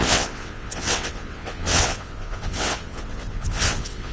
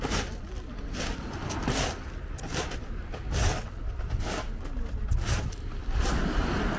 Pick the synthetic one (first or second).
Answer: first